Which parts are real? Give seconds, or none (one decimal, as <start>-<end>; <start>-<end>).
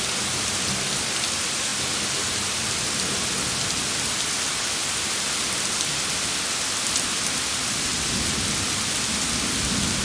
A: 0.0-10.0